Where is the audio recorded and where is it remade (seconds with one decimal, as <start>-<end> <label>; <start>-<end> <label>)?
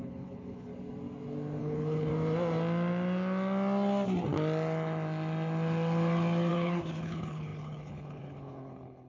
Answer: 0.0-0.7 remade; 0.7-1.6 recorded; 1.6-2.1 remade; 2.1-6.5 recorded; 6.5-9.1 remade